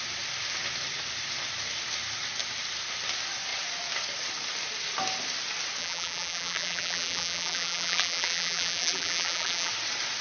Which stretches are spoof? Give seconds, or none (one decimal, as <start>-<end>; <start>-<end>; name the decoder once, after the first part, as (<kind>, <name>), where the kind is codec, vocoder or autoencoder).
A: 5.8-9.7 (vocoder, BigVGAN v2)